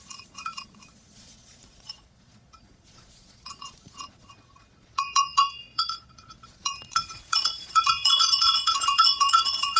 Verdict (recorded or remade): remade